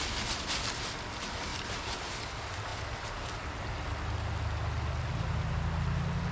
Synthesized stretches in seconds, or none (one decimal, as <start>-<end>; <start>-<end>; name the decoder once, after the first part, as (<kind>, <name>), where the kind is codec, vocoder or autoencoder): 1.5-2.3 (vocoder, BigVGAN v2)